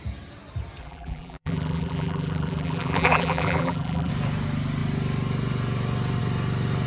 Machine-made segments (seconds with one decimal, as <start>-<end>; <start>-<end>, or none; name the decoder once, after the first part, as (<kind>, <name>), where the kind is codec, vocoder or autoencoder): 0.8-4.1 (vocoder, BigVGAN v2)

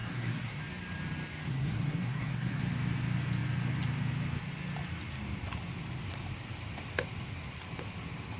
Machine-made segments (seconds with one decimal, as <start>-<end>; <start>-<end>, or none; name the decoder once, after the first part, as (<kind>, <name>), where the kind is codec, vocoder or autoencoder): 0.0-0.6 (codec, SNAC); 1.5-2.6

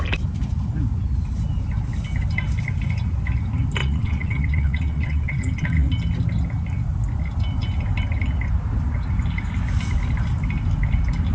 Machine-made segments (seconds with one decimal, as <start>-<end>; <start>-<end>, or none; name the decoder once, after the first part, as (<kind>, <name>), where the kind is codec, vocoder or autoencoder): 3.8-5.9 (vocoder, WaveNeXt)

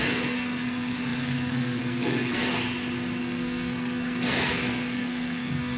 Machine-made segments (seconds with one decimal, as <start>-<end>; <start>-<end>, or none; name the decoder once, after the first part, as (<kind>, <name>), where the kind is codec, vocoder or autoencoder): 0.0-2.5 (codec, SNAC); 3.2-5.8

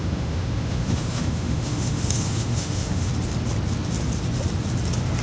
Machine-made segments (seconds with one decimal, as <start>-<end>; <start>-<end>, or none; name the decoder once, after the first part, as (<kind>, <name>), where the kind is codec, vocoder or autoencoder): 0.0-3.1 (autoencoder, DAC-VAE)

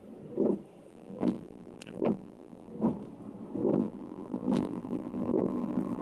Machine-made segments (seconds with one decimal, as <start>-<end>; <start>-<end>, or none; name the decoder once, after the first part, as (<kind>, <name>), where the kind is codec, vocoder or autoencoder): 0.9-2.7 (vocoder, BigVGAN v2); 3.7-6.0

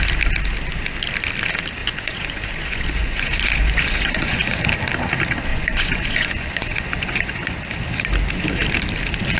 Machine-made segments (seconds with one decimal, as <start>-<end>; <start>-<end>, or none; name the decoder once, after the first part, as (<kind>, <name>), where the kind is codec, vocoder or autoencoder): 1.8-4.6 (vocoder, Vocos); 5.5-7.6

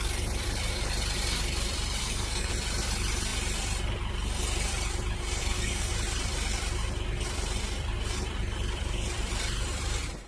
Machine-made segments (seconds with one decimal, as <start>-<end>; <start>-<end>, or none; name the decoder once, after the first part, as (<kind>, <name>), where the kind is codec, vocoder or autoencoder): 2.0-2.5 (codec, SNAC); 5.4-5.9